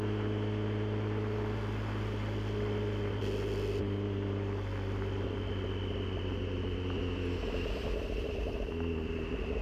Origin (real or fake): real